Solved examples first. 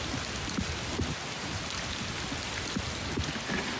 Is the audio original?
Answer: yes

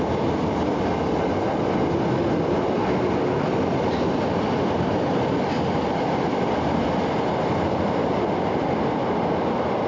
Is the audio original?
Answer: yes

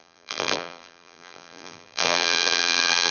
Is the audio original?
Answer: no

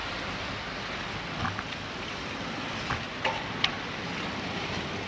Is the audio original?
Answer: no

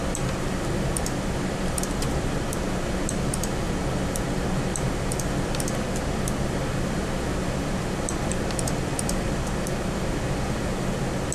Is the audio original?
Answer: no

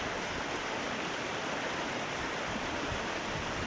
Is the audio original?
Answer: no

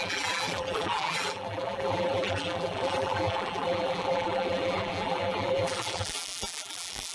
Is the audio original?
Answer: no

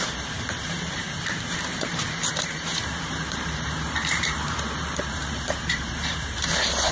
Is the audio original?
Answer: no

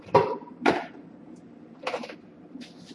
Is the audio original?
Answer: no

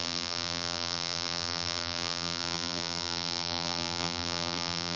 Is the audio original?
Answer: no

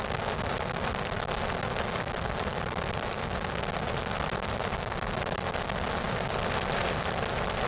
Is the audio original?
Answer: no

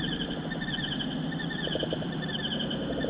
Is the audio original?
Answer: no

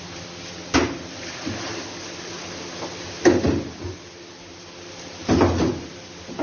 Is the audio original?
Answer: yes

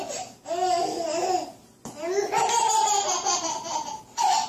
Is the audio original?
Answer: yes